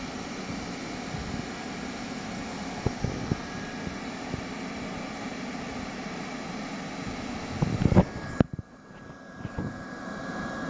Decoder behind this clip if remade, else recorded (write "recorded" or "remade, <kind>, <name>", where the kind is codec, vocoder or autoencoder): recorded